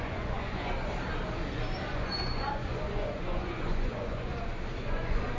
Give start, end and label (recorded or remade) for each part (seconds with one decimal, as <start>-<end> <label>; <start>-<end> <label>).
0.0-0.9 remade; 0.9-1.9 recorded; 1.9-4.3 remade; 4.3-4.8 recorded; 4.8-5.4 remade